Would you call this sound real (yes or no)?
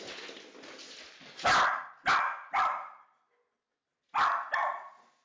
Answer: yes